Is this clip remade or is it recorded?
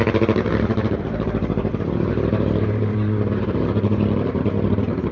remade